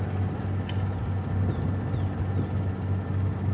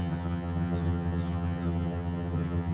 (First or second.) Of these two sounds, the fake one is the second